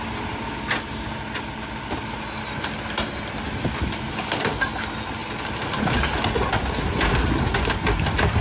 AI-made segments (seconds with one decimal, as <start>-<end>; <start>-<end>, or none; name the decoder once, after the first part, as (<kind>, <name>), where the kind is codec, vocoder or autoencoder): none